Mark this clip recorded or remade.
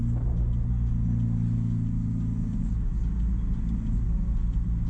recorded